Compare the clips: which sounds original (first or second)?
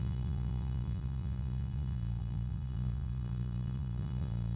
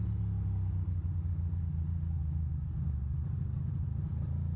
second